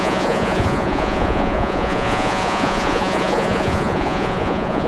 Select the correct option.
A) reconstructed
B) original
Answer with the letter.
A